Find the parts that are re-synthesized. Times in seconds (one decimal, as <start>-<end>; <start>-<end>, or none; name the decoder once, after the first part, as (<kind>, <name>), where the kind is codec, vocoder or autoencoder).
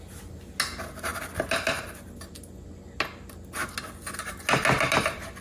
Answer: none